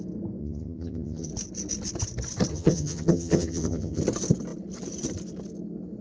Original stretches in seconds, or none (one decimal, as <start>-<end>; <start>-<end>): 0.0-0.4; 1.3-2.5; 4.0-6.0